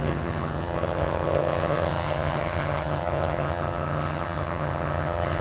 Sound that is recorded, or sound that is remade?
remade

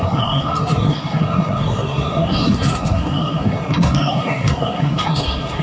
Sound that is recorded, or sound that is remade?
remade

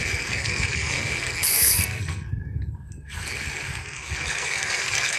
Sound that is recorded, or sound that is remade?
remade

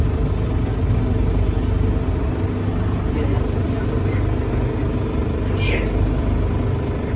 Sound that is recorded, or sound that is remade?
recorded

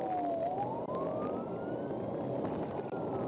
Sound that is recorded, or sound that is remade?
recorded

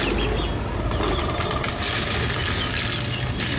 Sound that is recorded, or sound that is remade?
recorded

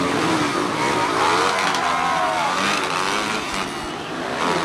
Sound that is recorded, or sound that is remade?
recorded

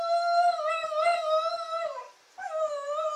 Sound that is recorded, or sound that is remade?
recorded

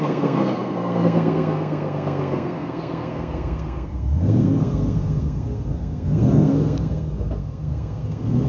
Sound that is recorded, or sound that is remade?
remade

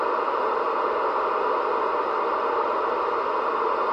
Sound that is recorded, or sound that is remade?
recorded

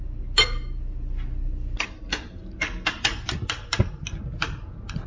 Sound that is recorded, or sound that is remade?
recorded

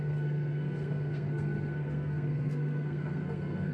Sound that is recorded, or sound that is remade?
remade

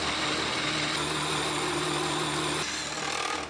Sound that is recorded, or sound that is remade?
recorded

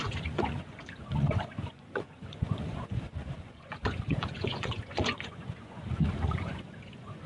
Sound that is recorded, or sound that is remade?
remade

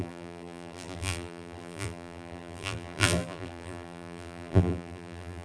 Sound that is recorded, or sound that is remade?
remade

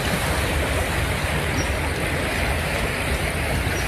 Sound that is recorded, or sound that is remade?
recorded